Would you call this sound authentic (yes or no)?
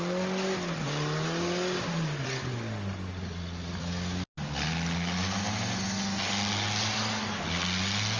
yes